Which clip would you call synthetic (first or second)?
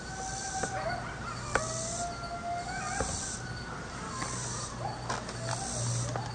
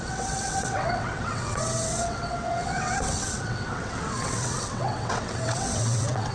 second